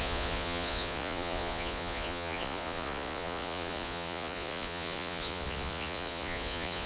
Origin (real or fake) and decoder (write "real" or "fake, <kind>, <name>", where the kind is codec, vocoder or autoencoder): fake, vocoder, Vocos